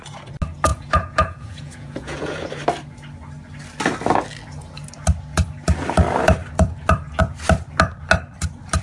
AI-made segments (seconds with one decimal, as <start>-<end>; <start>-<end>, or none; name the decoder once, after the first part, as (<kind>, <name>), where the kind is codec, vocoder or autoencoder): 0.7-2.5 (vocoder, Vocos)

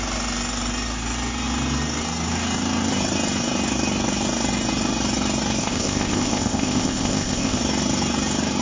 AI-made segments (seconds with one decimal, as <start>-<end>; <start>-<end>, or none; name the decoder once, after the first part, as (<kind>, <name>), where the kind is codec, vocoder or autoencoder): 5.6-7.6 (codec, ZipCodec)

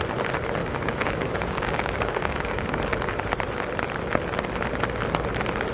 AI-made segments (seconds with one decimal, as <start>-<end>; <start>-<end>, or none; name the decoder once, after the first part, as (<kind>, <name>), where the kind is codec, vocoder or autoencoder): 0.6-2.8 (codec, DAC)

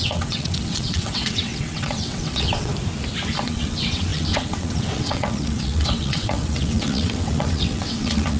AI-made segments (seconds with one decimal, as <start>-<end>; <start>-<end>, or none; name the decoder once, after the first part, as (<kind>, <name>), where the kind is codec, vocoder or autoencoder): 0.0-2.7 (vocoder, WaveNeXt); 3.4-8.4

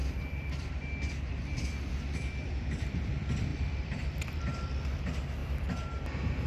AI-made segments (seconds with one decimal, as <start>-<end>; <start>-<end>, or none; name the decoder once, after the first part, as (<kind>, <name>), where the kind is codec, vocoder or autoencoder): 0.0-0.7 (vocoder, BigVGAN v2); 3.5-4.4

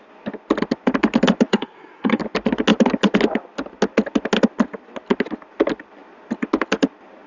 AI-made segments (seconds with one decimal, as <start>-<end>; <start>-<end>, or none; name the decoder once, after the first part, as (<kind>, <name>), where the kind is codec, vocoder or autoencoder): 1.5-2.2 (codec, SNAC)

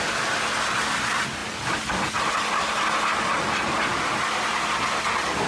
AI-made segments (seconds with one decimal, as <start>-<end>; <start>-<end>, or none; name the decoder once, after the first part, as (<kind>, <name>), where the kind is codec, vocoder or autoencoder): none

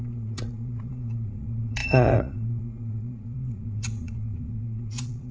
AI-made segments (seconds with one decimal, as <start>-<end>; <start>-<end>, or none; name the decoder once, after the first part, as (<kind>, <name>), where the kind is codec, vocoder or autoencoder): 0.0-5.3 (vocoder, Vocos)